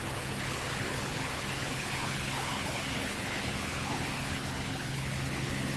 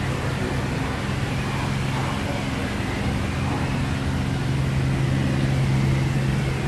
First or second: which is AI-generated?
first